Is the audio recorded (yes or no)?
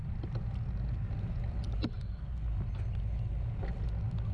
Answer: yes